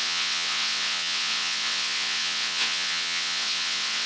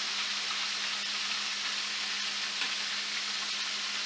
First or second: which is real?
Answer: second